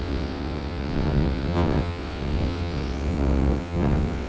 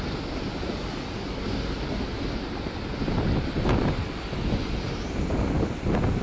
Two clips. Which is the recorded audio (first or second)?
second